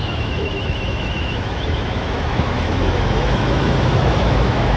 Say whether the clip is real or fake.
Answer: fake